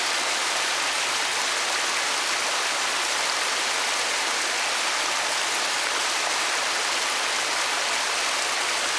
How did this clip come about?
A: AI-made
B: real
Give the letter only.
B